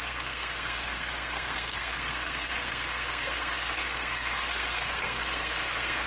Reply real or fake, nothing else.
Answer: fake